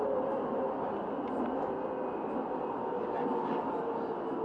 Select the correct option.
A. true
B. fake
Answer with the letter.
A